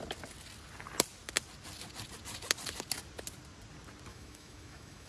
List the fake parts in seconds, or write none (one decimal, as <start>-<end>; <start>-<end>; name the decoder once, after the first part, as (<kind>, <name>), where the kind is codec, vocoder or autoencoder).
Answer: 4.1-5.1 (autoencoder, DAC-VAE)